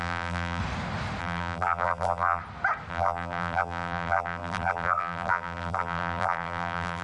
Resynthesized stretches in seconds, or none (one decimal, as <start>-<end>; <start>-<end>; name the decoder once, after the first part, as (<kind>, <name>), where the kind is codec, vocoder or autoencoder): 0.0-0.6 (vocoder, BigVGAN v2); 1.2-2.4; 2.9-7.0